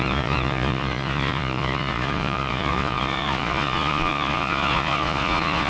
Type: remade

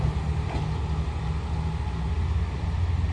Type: recorded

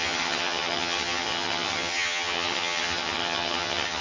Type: remade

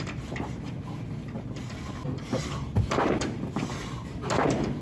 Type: recorded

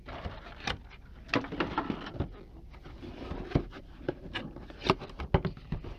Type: recorded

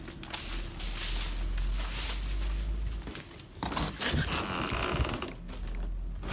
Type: recorded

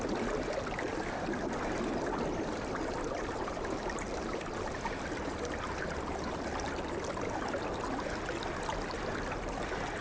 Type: recorded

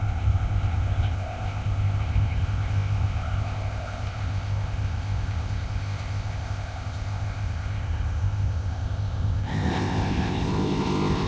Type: remade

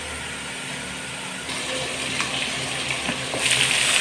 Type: recorded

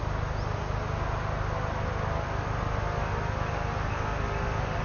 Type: recorded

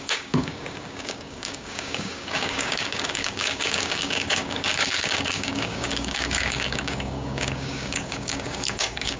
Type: remade